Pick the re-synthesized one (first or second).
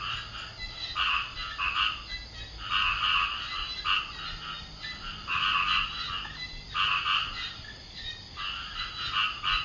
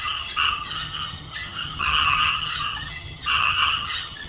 second